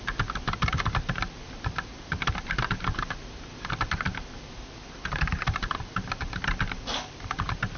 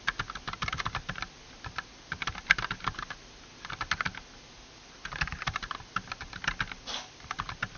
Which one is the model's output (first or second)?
first